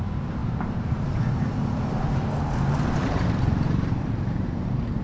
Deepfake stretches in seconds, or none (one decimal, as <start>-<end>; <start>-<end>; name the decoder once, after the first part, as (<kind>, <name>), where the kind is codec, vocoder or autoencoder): 0.4-1.2 (vocoder, BigVGAN v2); 3.0-5.0